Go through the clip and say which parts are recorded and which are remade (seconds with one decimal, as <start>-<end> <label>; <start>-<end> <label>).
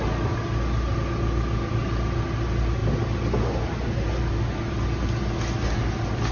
0.0-6.3 recorded